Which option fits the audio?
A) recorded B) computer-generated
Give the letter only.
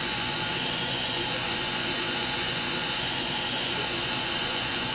B